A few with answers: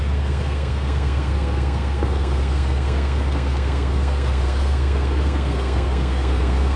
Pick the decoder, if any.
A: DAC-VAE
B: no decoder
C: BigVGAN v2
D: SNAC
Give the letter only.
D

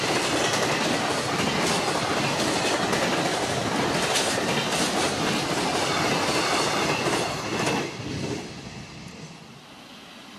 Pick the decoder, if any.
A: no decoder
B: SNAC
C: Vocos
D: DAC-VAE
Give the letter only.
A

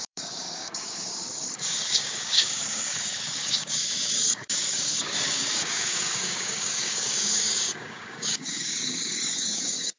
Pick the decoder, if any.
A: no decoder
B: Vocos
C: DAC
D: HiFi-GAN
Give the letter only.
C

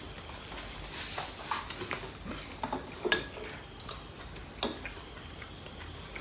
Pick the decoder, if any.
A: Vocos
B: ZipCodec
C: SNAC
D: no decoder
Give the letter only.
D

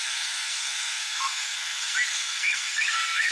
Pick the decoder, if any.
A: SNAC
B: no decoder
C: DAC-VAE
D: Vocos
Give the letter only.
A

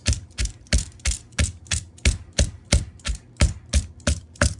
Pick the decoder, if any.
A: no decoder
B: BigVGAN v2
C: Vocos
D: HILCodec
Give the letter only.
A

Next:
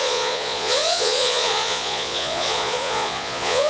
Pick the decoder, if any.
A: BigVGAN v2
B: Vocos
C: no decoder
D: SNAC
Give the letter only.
B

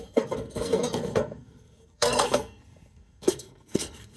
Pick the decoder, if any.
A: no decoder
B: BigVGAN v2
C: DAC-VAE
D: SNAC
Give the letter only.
D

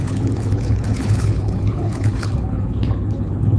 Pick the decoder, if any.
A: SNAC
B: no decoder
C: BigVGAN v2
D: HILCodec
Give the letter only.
D